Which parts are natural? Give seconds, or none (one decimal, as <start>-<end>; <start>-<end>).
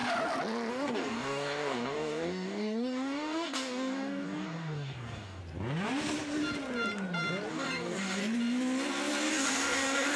0.0-0.7; 5.4-7.5; 8.2-9.3